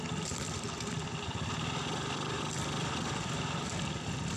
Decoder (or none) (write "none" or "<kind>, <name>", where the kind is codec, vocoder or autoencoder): none